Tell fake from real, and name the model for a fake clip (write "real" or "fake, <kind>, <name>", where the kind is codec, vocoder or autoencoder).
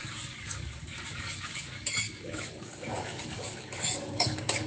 fake, codec, DAC